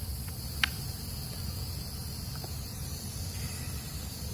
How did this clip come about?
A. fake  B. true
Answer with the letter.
B